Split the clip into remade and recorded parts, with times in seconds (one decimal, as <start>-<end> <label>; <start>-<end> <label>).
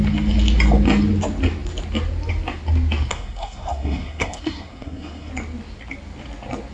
0.0-3.1 recorded; 3.1-5.3 remade; 5.3-6.7 recorded